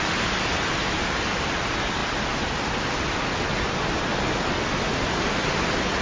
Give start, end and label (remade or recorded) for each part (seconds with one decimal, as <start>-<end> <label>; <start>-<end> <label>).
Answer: 0.0-6.0 recorded